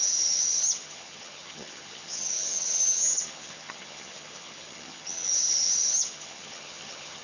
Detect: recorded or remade remade